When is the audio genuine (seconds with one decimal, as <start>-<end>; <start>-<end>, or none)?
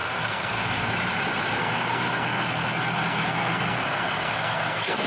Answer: 0.9-1.6